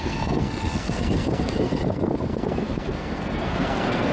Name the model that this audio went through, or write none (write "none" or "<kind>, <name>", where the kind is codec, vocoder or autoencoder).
codec, SNAC